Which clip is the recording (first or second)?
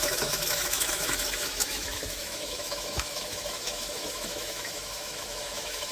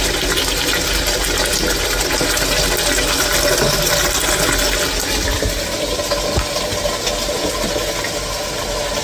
second